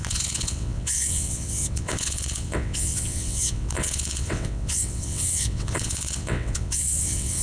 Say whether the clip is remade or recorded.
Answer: remade